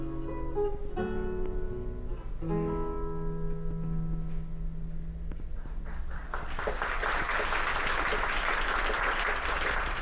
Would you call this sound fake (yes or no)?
no